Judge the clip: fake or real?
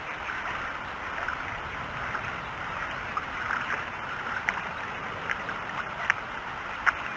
real